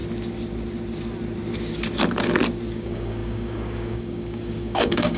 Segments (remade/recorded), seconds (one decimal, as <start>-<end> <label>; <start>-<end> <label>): 0.0-2.7 recorded; 2.7-5.2 remade